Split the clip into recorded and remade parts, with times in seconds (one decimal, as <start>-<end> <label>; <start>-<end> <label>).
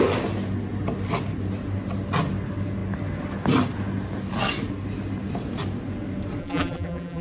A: 0.0-6.4 recorded; 6.4-7.2 remade